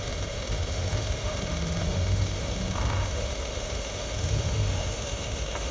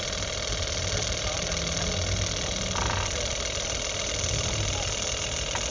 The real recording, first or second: second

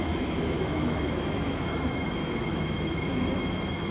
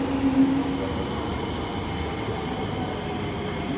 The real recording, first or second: second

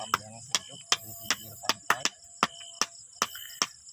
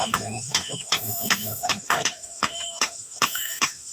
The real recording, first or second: first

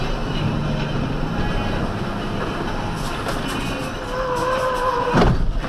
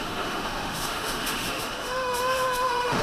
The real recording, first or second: first